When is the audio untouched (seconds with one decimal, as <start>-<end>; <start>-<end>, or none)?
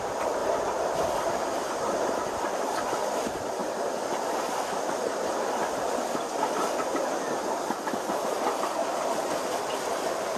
0.4-3.0